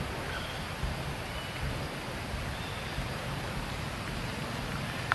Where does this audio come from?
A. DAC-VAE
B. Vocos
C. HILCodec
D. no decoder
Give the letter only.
D